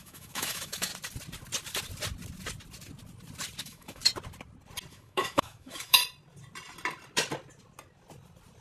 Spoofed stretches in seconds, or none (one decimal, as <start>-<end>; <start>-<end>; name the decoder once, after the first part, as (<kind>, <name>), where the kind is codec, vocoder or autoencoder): 0.0-0.9 (autoencoder, DAC-VAE); 3.6-4.0; 4.9-6.0

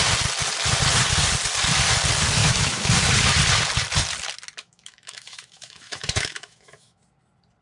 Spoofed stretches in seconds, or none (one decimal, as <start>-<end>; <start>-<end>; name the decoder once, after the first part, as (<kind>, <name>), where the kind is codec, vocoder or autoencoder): 2.4-2.9 (autoencoder, DAC-VAE); 4.6-7.0

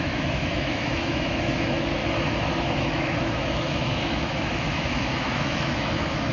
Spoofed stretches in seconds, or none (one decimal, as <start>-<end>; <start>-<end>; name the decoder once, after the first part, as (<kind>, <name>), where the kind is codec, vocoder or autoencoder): 0.0-2.0 (autoencoder, DAC-VAE); 2.6-6.3

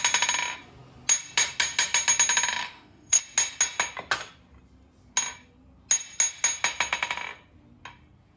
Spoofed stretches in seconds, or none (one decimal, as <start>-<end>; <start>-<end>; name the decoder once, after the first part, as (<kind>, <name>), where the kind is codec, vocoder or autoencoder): 2.6-3.2 (autoencoder, DAC-VAE)

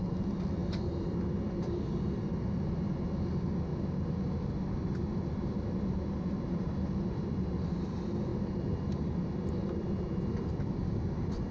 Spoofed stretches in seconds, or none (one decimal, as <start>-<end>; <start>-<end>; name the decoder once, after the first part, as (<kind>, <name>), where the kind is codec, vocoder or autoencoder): none